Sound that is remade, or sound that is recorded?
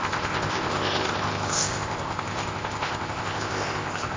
remade